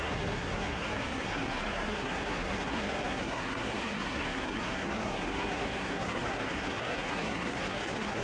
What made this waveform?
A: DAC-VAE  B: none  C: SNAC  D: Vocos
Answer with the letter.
C